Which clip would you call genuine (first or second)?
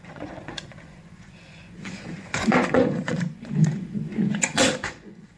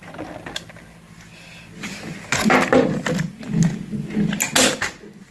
second